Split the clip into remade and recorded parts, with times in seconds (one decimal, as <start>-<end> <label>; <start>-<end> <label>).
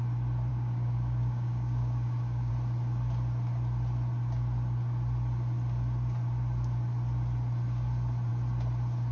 0.0-0.5 recorded; 0.5-2.5 remade; 2.5-9.1 recorded